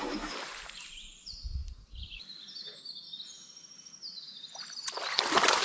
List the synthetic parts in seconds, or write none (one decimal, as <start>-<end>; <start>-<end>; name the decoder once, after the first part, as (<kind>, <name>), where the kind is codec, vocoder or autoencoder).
none